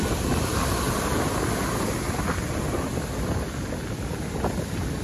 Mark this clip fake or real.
real